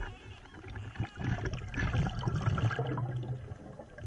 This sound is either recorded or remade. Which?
recorded